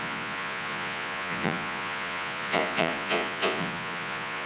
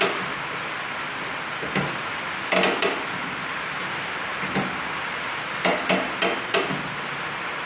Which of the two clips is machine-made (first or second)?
first